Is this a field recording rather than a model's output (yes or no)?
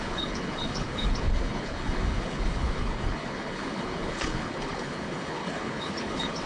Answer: no